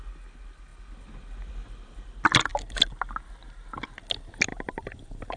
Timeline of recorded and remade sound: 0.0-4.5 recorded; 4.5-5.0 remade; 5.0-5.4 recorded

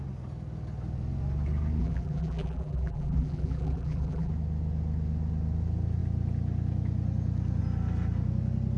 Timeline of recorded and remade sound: 0.0-1.8 recorded; 1.8-4.3 remade; 4.3-8.8 recorded